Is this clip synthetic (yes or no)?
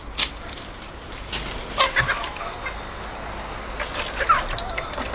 no